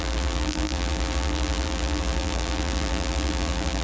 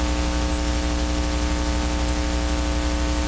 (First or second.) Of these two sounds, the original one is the second